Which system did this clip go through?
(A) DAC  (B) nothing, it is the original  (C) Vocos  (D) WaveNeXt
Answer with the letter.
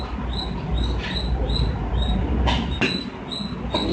B